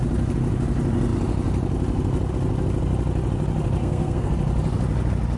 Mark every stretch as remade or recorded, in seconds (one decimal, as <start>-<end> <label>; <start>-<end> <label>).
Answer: 0.0-3.8 recorded; 3.8-4.3 remade; 4.3-5.4 recorded

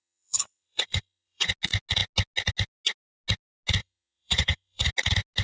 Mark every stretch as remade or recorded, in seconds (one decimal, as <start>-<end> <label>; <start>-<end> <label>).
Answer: 0.0-1.5 remade; 1.5-3.8 recorded; 3.8-4.9 remade; 4.9-5.4 recorded